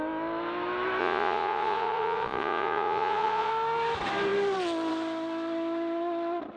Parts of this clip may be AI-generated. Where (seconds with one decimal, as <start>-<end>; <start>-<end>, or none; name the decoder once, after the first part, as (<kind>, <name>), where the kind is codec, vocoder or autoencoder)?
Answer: 1.0-3.5 (vocoder, Vocos)